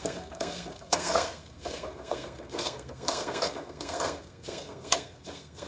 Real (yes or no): no